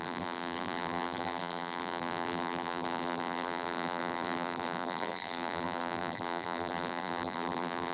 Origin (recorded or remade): remade